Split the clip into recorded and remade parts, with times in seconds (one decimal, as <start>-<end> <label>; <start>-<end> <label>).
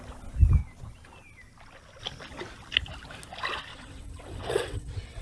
0.0-3.7 recorded; 3.7-5.2 remade